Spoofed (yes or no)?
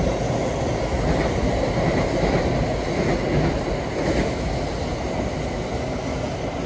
no